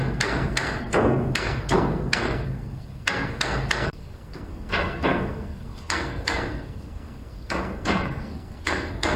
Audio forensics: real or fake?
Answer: fake